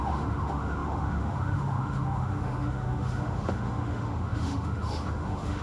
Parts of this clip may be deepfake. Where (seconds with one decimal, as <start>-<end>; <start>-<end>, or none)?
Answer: 0.0-5.6